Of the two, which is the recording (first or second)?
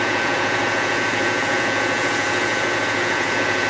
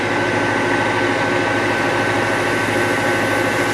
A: second